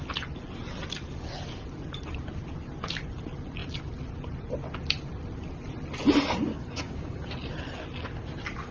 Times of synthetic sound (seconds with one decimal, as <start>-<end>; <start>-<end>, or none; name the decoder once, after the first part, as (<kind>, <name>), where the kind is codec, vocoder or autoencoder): 6.5-7.2 (codec, DAC)